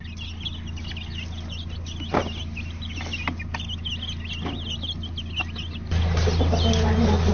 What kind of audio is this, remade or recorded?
recorded